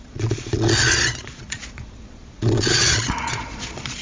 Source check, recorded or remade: remade